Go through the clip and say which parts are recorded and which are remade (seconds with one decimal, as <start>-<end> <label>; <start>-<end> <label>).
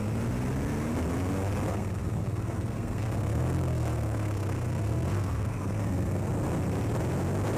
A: 0.0-1.7 recorded; 1.7-6.3 remade; 6.3-7.6 recorded